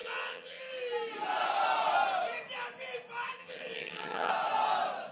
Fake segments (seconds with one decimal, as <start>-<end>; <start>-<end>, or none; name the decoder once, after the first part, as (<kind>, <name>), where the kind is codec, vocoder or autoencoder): 0.0-0.6 (vocoder, HiFi-GAN); 3.4-4.3